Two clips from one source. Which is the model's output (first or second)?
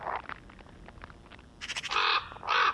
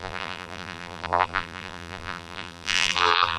second